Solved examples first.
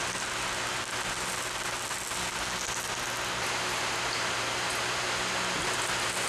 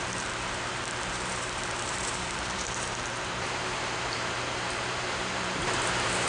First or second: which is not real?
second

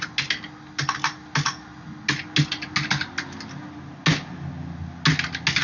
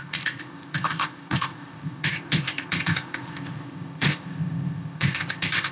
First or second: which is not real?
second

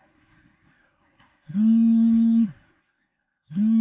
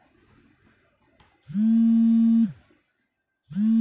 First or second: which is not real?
first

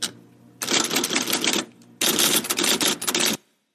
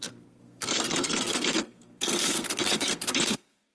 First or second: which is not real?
second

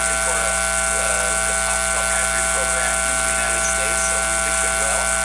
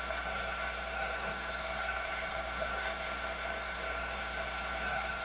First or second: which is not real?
second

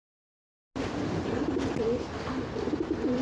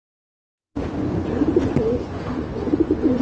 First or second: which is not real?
second